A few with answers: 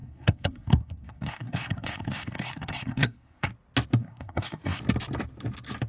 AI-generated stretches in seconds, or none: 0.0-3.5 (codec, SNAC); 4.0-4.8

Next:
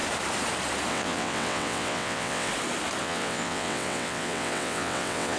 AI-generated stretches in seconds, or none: 0.9-2.5 (vocoder, WaveNeXt); 3.0-5.4

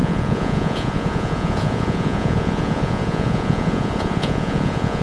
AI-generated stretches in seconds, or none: 0.0-5.0 (vocoder, Vocos)

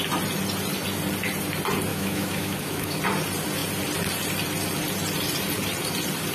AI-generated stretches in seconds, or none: 1.9-3.0 (autoencoder, DAC-VAE)

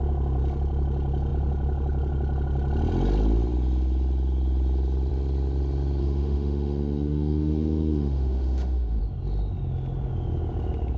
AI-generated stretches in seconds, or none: 6.0-9.0 (autoencoder, DAC-VAE)

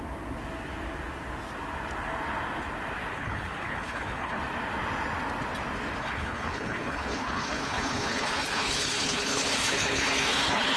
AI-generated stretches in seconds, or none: 3.1-4.4 (codec, HILCodec); 6.0-10.8

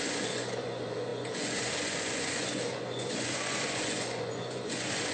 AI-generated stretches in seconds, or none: 0.0-5.1 (vocoder, Vocos)

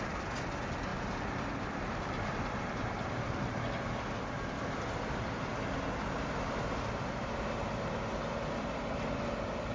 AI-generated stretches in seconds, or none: 0.9-3.5 (vocoder, BigVGAN v2)